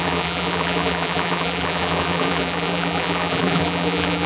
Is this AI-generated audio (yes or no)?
yes